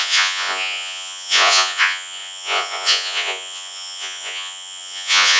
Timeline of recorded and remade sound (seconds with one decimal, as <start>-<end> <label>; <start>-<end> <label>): 0.0-5.4 remade